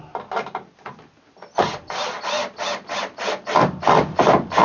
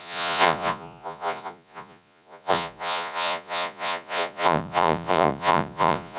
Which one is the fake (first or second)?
second